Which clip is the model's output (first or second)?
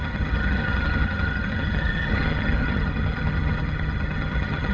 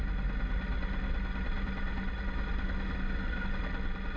first